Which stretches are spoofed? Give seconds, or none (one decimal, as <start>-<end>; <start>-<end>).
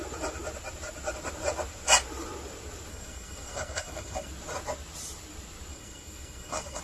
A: 2.9-4.3; 5.7-6.8